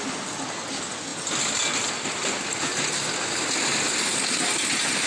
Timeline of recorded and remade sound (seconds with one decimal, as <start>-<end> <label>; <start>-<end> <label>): 0.0-5.1 recorded